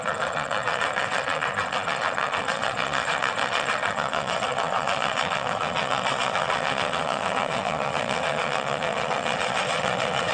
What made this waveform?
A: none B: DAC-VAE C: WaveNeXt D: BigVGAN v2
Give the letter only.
C